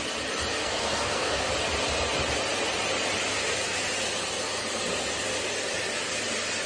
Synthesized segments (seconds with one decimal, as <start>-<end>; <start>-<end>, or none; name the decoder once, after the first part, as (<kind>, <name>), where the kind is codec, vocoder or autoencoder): 0.6-1.5 (codec, SNAC)